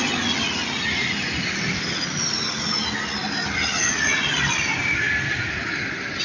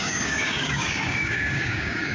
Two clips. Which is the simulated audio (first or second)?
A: second